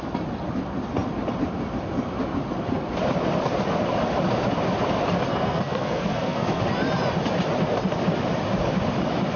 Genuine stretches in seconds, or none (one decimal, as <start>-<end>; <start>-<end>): 0.0-5.3; 6.6-9.4